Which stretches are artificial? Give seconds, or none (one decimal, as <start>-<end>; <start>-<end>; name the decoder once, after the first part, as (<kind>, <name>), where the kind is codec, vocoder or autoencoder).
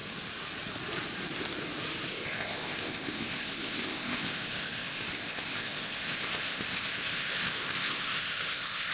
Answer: 2.1-8.9 (codec, ZipCodec)